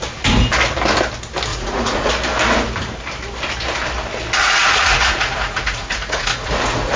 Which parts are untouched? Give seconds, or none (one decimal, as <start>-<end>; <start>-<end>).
0.0-1.5; 2.1-4.4